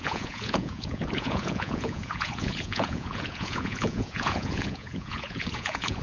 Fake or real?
fake